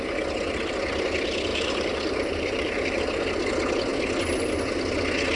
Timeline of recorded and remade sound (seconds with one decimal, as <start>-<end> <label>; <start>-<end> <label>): 0.0-1.5 recorded; 1.5-3.0 remade; 3.0-5.4 recorded